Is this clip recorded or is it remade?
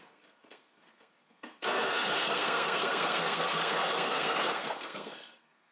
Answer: remade